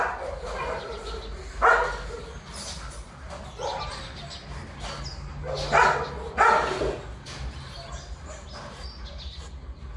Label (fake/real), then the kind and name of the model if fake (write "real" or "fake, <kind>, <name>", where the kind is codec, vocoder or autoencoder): real